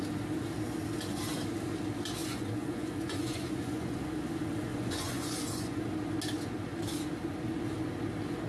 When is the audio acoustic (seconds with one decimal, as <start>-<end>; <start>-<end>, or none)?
0.0-2.2; 4.1-4.7; 5.8-8.5